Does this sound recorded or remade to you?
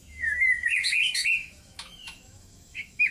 remade